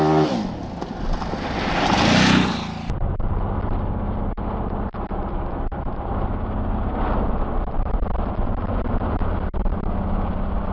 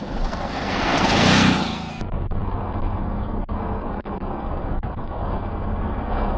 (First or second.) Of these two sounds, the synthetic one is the second